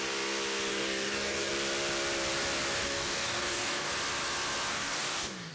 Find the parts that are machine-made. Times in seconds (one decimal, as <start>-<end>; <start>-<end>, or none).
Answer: 0.7-1.5; 2.8-3.9; 4.7-5.5